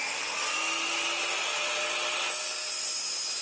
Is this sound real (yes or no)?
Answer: yes